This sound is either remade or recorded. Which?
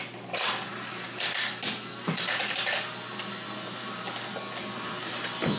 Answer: recorded